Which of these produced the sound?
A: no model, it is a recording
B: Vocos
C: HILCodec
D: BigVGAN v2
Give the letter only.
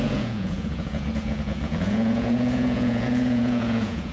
B